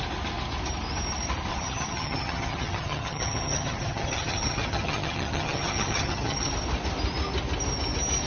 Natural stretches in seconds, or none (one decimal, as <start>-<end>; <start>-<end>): 0.0-1.5; 6.5-8.3